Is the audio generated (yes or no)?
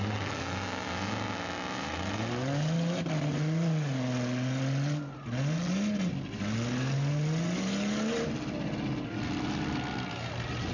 no